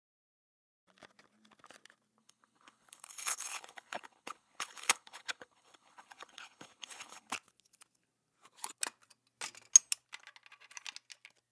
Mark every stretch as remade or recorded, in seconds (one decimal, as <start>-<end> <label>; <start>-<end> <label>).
0.0-2.2 recorded; 2.2-7.3 remade; 7.3-11.5 recorded